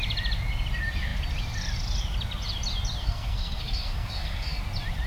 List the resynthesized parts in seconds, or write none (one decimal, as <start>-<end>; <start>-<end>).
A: 3.0-4.6